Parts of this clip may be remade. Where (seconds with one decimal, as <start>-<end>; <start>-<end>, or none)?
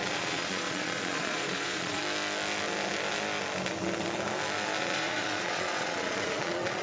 0.0-2.0; 4.8-6.8